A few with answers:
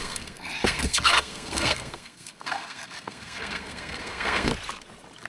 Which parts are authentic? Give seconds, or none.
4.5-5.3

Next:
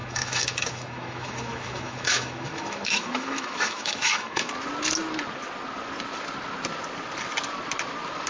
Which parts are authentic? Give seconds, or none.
4.5-8.3